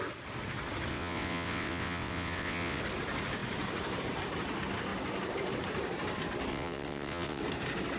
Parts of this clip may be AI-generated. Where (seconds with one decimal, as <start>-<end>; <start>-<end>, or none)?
0.9-2.8; 6.5-7.4